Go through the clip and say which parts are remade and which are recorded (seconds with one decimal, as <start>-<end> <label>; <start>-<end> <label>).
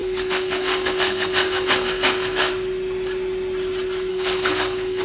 0.0-2.5 remade; 2.5-4.1 recorded; 4.1-5.0 remade